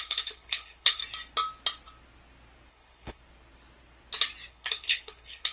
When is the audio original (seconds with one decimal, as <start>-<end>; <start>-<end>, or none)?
1.0-2.7; 3.2-4.5